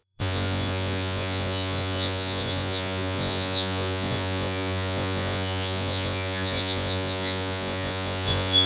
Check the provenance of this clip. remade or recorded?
remade